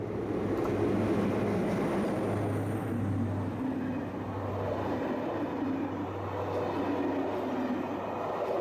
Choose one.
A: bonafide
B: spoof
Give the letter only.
A